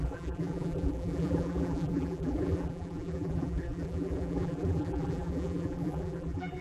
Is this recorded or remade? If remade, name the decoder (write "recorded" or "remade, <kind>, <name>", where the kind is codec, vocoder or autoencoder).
remade, vocoder, BigVGAN v2